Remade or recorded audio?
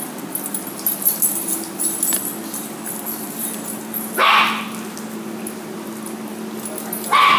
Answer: recorded